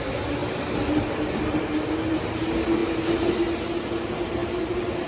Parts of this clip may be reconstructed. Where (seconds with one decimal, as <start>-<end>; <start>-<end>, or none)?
0.4-1.9; 4.4-5.1